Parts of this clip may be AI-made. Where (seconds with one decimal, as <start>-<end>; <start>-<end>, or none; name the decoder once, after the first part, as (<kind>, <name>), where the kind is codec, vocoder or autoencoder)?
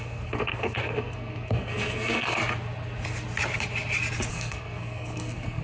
0.0-2.4 (codec, SNAC); 4.3-5.6